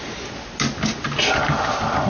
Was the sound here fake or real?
real